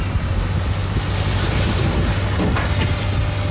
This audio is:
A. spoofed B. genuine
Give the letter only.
B